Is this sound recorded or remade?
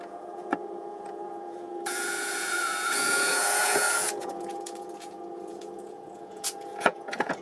remade